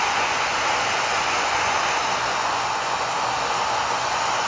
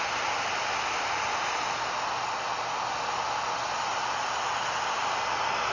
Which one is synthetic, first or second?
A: first